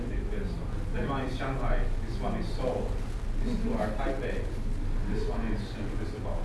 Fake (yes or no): no